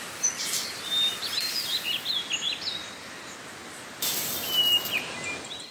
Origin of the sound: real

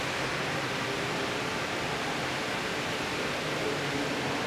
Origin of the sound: real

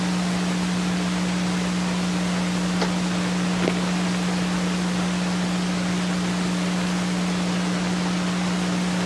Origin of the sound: real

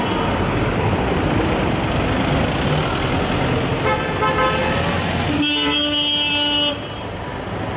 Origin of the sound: real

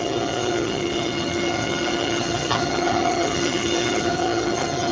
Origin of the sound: fake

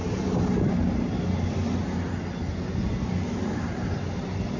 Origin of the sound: real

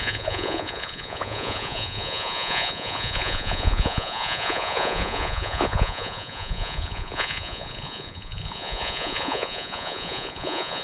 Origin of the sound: fake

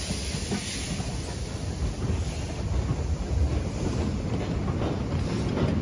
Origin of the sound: real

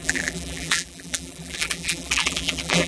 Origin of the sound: fake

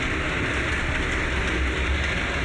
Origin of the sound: real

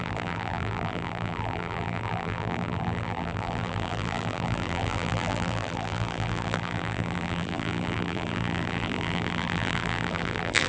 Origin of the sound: fake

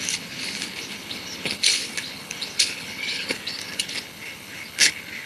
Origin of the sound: fake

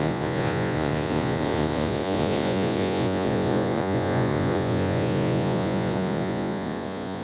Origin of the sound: fake